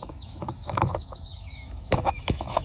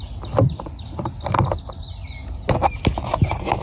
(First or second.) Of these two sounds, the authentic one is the second